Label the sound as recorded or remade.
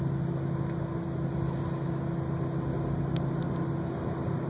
recorded